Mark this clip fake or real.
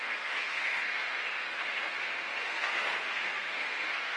fake